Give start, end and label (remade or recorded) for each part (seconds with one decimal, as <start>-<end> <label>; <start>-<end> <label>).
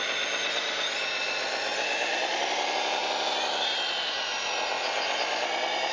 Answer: 0.0-5.9 recorded